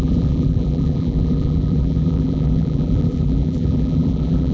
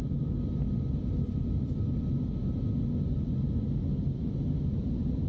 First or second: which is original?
second